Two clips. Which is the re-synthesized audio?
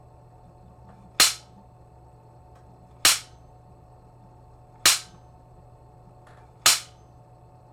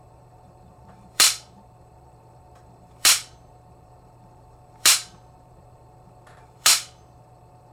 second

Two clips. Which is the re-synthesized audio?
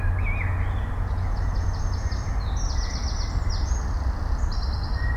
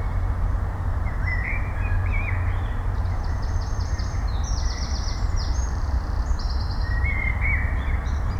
second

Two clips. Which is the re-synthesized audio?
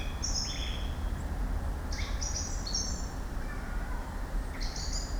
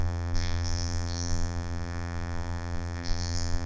second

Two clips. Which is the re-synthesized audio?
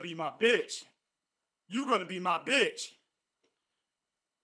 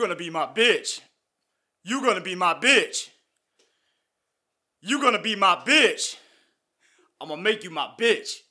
first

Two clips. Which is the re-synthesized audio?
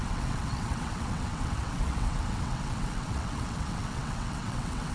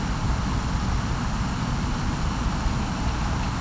first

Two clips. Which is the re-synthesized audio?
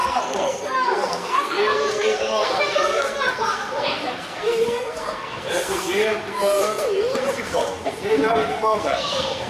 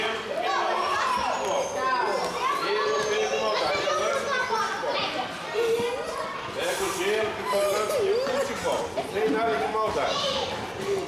first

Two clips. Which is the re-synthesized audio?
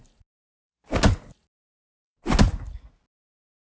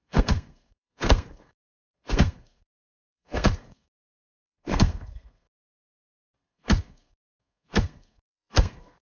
second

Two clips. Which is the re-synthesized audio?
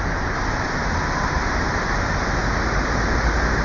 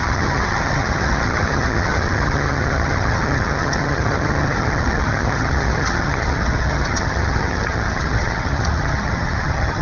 second